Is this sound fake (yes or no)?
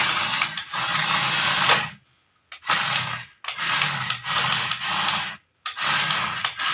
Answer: no